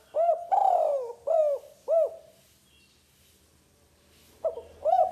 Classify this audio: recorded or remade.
recorded